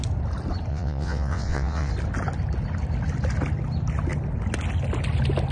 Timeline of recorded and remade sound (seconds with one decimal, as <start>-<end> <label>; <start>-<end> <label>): 0.0-0.7 recorded; 0.7-1.9 remade; 1.9-5.5 recorded